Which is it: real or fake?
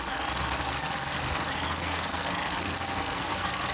fake